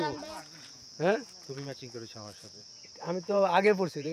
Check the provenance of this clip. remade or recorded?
remade